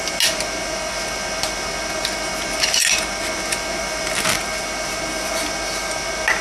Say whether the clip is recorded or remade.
recorded